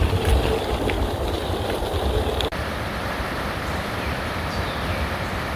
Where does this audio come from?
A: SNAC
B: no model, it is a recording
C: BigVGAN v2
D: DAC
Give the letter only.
C